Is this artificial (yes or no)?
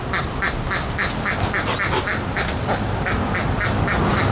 no